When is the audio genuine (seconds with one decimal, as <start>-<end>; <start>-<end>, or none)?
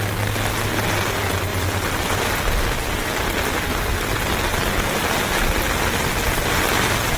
0.0-7.2